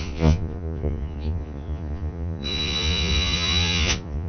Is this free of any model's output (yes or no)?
no